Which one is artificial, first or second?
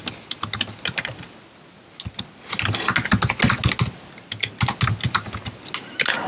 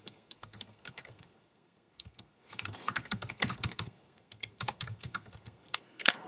second